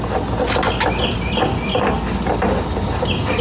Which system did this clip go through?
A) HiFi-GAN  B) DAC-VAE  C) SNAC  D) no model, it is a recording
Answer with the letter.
D